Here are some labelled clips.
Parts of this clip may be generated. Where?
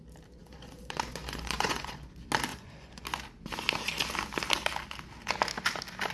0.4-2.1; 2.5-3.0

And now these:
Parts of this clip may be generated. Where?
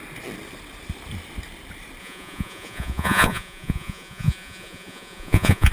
2.0-5.7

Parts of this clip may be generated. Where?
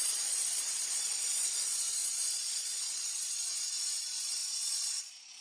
0.0-5.4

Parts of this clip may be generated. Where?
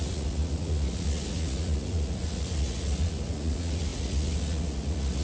0.0-5.2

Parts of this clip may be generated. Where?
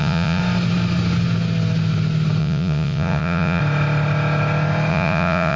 0.0-0.4; 2.4-3.6; 4.9-5.6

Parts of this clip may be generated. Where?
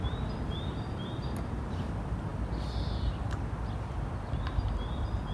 none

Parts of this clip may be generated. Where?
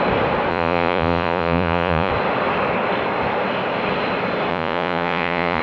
0.5-2.1; 4.5-5.6